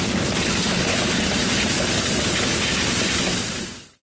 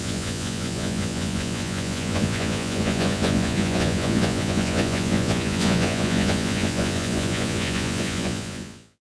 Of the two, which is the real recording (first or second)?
first